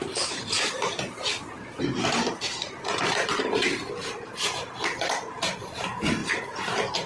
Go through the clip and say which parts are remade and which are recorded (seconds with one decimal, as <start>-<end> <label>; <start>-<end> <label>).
0.0-7.1 remade